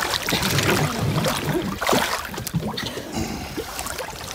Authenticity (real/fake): fake